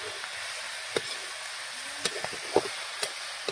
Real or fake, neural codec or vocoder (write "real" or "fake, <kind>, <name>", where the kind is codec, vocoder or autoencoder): real